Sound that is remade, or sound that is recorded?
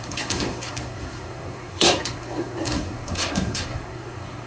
remade